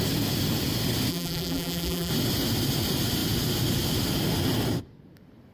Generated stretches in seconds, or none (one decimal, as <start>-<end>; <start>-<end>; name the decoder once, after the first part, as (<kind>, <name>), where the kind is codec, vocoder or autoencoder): 1.1-2.1 (vocoder, BigVGAN v2)